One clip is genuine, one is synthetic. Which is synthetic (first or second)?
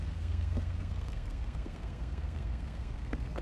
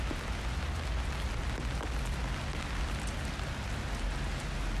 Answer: first